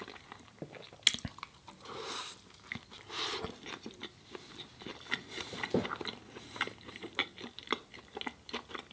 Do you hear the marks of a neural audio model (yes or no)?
no